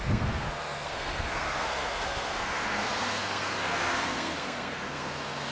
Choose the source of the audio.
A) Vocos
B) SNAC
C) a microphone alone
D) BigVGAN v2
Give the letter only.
B